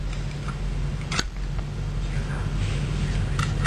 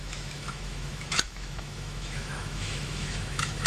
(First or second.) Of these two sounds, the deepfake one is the second